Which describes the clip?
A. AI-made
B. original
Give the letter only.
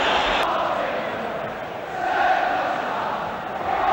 B